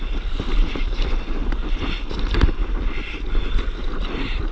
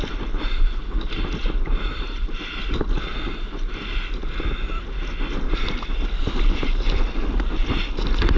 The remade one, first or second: first